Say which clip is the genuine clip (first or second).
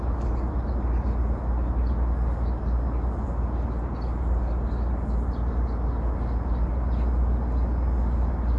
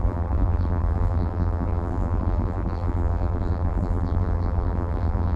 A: first